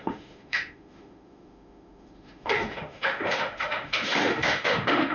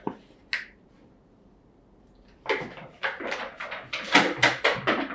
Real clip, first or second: second